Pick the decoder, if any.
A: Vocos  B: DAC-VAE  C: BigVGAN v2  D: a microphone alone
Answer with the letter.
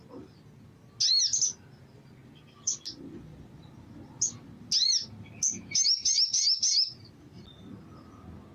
D